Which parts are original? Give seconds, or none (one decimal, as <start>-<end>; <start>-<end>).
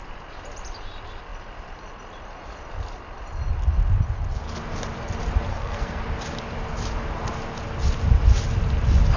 0.0-5.5; 6.0-9.2